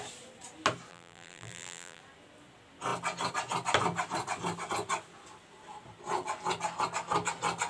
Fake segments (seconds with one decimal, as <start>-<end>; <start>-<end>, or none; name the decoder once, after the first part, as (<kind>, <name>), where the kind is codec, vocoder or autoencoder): 0.9-2.0 (vocoder, BigVGAN v2)